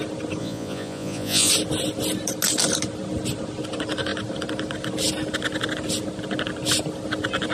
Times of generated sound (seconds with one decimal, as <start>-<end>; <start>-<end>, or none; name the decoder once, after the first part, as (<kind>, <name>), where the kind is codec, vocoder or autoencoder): 0.4-1.5 (vocoder, Vocos)